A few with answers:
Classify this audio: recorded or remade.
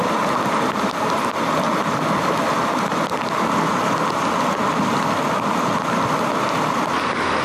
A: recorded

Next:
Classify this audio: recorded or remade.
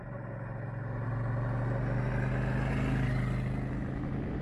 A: recorded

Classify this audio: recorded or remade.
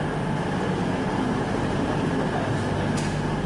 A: recorded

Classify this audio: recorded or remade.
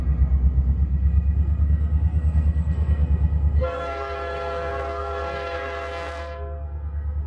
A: remade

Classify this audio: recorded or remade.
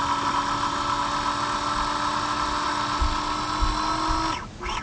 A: recorded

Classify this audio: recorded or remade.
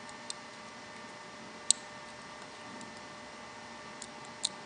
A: recorded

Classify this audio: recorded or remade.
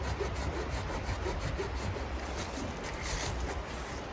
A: recorded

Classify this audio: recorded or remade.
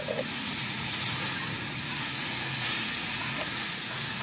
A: remade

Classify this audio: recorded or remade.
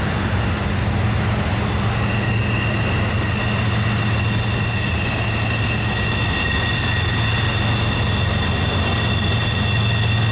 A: recorded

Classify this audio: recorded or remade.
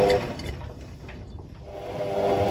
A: recorded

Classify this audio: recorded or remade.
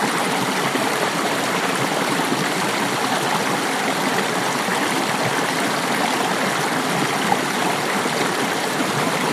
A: recorded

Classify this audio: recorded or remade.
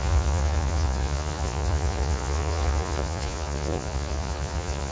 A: remade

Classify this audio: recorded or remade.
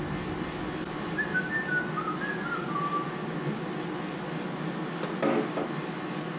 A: recorded